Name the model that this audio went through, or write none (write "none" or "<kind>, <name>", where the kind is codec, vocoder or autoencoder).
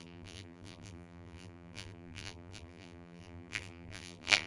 vocoder, BigVGAN v2